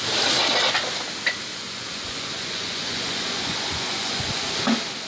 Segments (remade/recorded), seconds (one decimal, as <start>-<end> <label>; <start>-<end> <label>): 0.0-1.5 recorded; 1.5-4.6 remade; 4.6-5.1 recorded

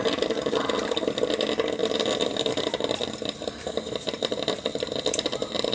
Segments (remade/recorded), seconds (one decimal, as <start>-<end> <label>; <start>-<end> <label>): 0.0-1.8 recorded; 1.8-5.0 remade; 5.0-5.7 recorded

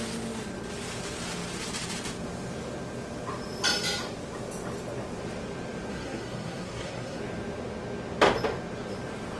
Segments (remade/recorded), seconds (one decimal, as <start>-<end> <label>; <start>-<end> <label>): 0.0-5.9 recorded; 5.9-7.2 remade; 7.2-9.4 recorded

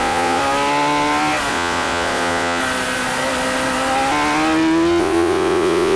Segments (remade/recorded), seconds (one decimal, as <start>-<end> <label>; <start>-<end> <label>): 0.0-0.4 remade; 0.4-1.5 recorded; 1.5-2.6 remade; 2.6-5.0 recorded; 5.0-6.0 remade

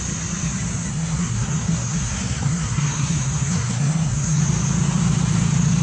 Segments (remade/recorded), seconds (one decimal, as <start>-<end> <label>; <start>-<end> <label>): 0.0-0.9 recorded; 0.9-4.4 remade; 4.4-5.8 recorded

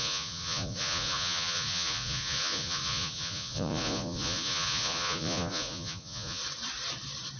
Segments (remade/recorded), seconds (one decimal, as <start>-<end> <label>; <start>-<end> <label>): 0.0-6.4 remade; 6.4-7.4 recorded

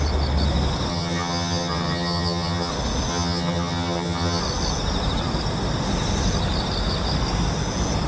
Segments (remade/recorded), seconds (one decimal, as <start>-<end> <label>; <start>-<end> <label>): 0.0-0.9 recorded; 0.9-2.7 remade; 2.7-3.1 recorded; 3.1-4.4 remade; 4.4-8.1 recorded

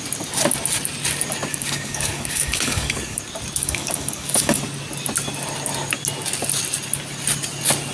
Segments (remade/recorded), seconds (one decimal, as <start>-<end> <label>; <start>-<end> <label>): 0.0-1.5 recorded; 1.5-3.2 remade; 3.2-3.6 recorded; 3.6-4.6 remade; 4.6-7.9 recorded